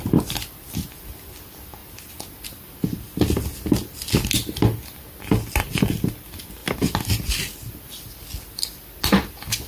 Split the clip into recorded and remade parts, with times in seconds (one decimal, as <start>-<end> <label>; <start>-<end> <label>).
0.0-9.7 recorded